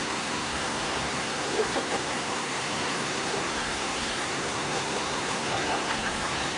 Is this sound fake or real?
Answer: fake